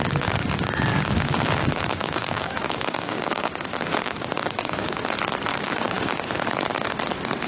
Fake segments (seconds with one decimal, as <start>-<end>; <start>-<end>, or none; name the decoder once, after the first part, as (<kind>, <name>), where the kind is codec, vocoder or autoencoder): 0.9-5.0 (codec, DAC); 5.5-6.1

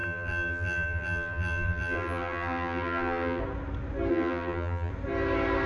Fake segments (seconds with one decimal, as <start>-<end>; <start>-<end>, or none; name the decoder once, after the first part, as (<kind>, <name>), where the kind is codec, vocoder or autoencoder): 0.0-3.4 (vocoder, BigVGAN v2); 4.1-4.9